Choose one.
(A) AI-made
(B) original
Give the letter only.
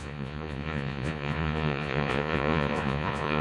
A